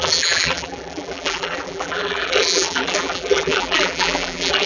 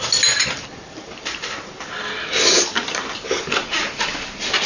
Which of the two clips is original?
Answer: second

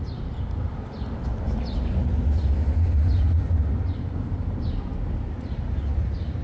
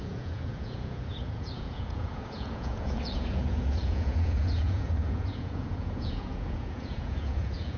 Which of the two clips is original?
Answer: first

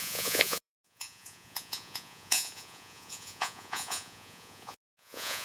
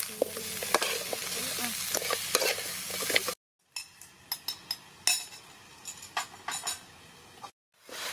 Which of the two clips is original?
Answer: second